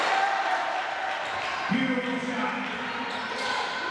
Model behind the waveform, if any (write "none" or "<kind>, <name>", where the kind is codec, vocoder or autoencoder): none